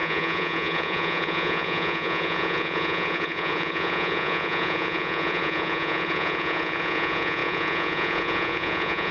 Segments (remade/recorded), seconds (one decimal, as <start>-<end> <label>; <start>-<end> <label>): 0.0-9.1 remade